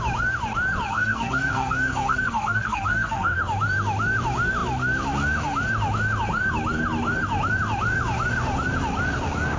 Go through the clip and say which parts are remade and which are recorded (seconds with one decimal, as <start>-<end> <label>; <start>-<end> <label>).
0.0-0.9 recorded; 0.9-3.4 remade; 3.4-9.6 recorded